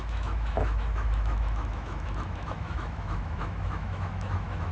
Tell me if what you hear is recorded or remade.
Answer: remade